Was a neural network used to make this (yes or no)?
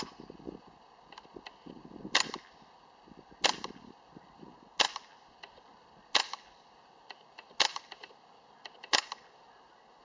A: no